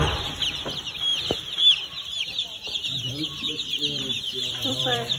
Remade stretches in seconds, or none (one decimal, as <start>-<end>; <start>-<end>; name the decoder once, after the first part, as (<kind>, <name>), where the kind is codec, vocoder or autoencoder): 0.0-1.1 (vocoder, BigVGAN v2); 3.1-5.2